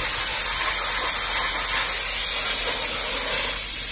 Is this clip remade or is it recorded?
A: recorded